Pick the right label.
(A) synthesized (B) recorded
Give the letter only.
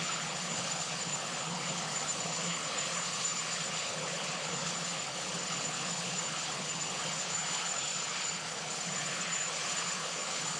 A